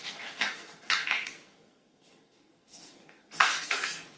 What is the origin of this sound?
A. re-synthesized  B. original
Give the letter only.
A